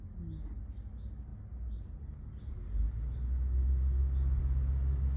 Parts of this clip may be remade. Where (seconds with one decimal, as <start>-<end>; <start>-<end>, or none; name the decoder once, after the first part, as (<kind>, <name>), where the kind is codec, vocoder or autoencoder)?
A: none